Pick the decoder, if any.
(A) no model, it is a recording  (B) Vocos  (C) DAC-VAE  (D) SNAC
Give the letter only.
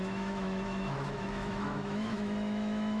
C